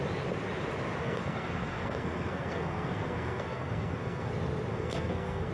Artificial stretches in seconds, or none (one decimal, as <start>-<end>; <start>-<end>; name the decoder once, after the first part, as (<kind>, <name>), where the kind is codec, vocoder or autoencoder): 1.0-4.3 (codec, SNAC); 4.7-5.5